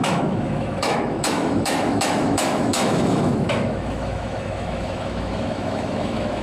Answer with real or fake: fake